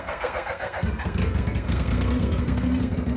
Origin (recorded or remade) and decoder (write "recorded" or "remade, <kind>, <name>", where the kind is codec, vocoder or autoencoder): remade, codec, SNAC